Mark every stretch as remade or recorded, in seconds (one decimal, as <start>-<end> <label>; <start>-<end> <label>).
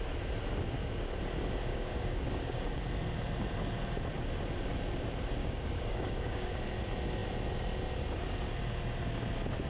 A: 0.0-1.7 recorded; 1.7-2.8 remade; 2.8-5.4 recorded; 5.4-6.5 remade; 6.5-9.7 recorded